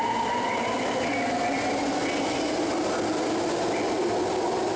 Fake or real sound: real